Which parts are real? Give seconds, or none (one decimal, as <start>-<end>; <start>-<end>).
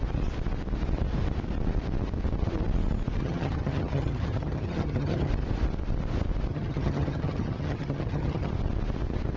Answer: 0.0-3.2; 5.3-6.5; 8.5-9.4